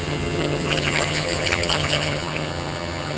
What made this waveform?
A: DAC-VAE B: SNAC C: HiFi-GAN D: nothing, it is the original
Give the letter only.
C